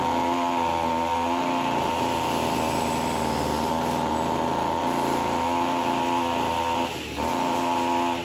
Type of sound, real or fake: real